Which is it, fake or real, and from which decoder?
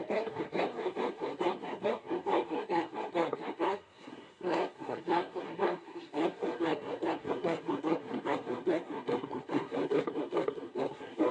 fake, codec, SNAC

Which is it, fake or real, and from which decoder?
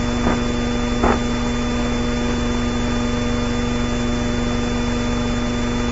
real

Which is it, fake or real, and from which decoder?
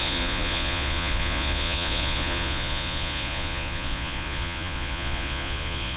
fake, vocoder, Vocos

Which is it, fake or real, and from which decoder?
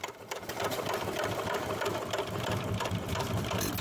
real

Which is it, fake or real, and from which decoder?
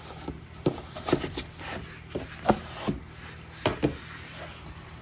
real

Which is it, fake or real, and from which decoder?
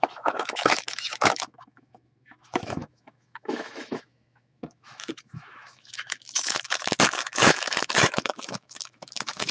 fake, autoencoder, DAC-VAE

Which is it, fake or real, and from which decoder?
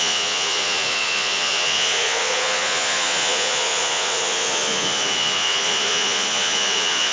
fake, vocoder, Vocos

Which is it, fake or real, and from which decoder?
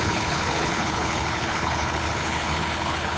fake, codec, HILCodec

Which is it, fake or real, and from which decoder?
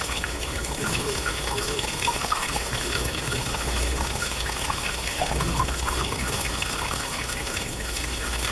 fake, autoencoder, DAC-VAE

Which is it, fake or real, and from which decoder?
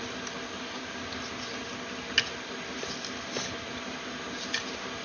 real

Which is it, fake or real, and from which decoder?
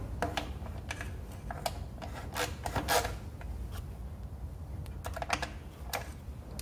real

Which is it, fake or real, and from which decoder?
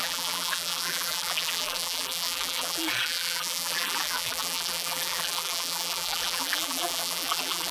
fake, vocoder, BigVGAN v2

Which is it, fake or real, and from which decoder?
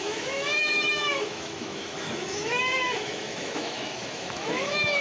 fake, autoencoder, DAC-VAE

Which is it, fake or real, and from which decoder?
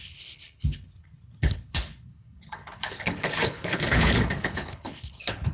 fake, codec, HILCodec